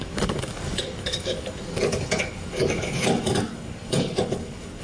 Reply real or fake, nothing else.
fake